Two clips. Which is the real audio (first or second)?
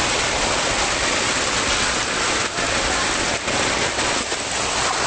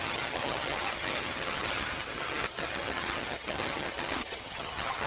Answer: first